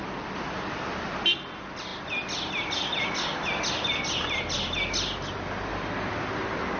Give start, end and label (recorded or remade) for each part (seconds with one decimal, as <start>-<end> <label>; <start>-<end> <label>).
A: 0.0-6.8 recorded